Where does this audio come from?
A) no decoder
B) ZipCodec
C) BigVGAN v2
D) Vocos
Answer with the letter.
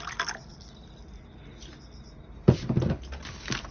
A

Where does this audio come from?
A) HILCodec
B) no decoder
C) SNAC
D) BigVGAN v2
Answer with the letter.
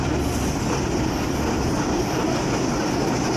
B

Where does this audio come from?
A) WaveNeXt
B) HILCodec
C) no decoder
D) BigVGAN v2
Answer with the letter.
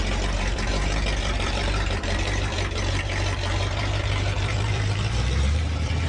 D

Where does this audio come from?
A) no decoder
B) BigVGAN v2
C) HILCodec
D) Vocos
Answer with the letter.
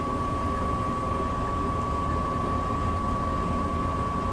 A